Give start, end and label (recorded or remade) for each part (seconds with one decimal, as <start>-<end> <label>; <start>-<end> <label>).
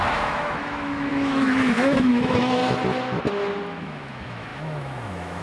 0.0-2.6 remade; 2.6-3.8 recorded; 3.8-5.4 remade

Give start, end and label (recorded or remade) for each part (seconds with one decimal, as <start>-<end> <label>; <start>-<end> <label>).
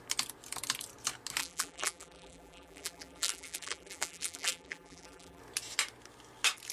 0.0-1.4 recorded; 1.4-5.4 remade; 5.4-6.7 recorded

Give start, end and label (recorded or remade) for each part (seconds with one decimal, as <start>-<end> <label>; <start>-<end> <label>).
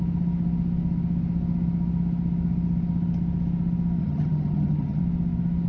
0.0-4.0 recorded; 4.0-5.0 remade; 5.0-5.7 recorded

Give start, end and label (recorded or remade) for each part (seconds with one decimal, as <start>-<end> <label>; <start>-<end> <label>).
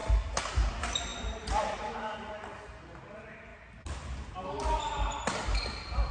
0.0-6.1 recorded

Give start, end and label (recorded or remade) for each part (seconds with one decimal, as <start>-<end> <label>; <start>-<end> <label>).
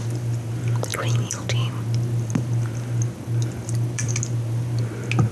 0.0-5.3 recorded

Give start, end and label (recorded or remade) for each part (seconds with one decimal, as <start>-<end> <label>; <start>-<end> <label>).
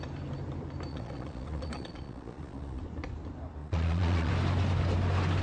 0.0-0.9 recorded; 0.9-2.8 remade; 2.8-3.6 recorded; 3.6-4.3 remade; 4.3-5.4 recorded